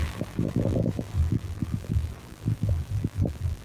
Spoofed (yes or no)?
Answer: yes